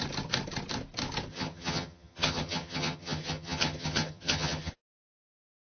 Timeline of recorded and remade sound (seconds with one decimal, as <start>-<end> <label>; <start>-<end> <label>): 0.0-1.3 recorded; 1.3-4.7 remade; 4.7-5.7 recorded